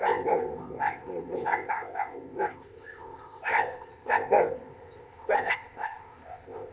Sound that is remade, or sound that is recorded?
remade